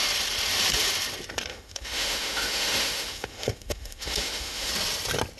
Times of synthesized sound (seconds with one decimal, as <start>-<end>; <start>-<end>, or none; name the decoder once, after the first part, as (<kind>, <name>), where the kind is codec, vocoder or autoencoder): 1.5-4.7 (autoencoder, DAC-VAE)